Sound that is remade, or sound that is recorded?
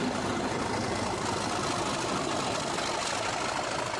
recorded